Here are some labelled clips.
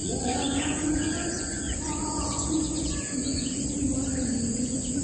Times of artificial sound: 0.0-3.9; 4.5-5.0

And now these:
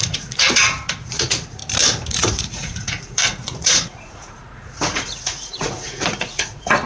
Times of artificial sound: 0.0-1.6; 2.1-6.9

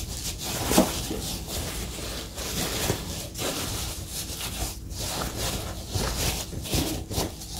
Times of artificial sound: none

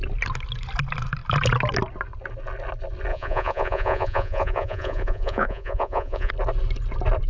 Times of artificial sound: 3.1-6.3

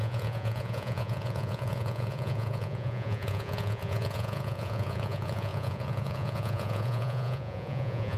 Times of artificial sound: 0.0-8.2